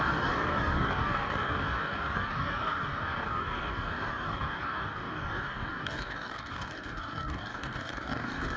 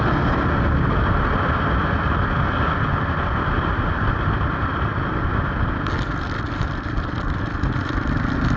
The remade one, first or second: first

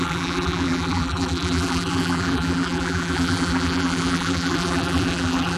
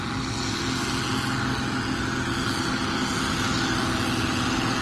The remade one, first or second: first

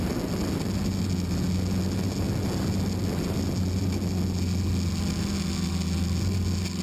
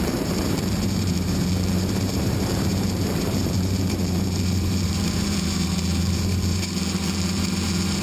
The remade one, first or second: second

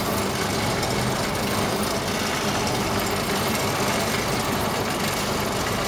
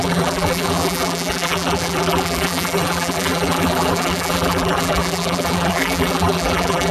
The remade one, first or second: second